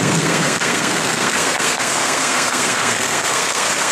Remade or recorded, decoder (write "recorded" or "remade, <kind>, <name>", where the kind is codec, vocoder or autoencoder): remade, codec, SNAC